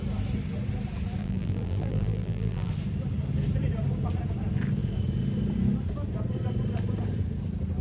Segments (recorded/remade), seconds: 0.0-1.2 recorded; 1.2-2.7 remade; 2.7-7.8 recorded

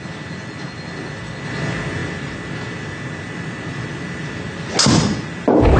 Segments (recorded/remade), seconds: 0.0-5.8 recorded

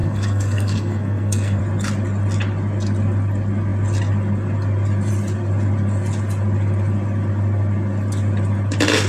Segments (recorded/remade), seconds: 0.0-1.6 remade; 1.6-9.1 recorded

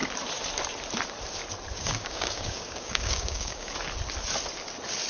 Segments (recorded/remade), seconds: 0.0-1.7 recorded; 1.7-3.7 remade; 3.7-5.1 recorded

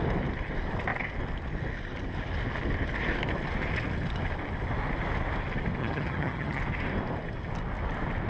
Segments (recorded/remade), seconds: 0.0-5.8 recorded; 5.8-6.6 remade; 6.6-8.3 recorded